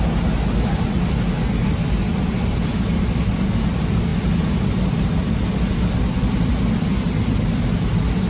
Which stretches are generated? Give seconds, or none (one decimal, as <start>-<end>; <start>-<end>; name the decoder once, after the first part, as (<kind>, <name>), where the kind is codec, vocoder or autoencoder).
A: none